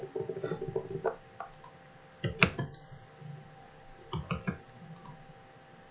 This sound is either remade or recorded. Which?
recorded